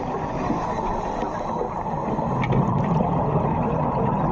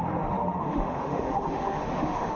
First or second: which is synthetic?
second